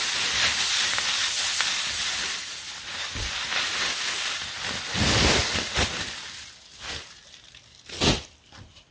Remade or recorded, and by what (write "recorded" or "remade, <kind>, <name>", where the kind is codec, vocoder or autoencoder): recorded